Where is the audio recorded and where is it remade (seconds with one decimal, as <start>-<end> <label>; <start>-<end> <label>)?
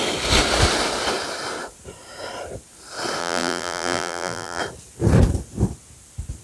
0.0-3.2 recorded; 3.2-4.6 remade; 4.6-6.4 recorded